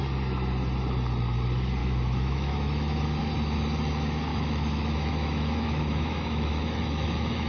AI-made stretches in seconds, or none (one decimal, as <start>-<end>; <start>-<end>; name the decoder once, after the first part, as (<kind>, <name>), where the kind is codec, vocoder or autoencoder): 1.8-3.2 (autoencoder, DAC-VAE); 4.3-7.5